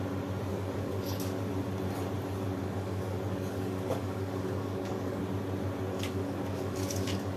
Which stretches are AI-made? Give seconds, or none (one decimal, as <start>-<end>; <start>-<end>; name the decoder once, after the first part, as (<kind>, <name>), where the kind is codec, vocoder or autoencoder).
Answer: 0.5-1.4 (codec, DAC); 2.6-5.2; 5.9-7.4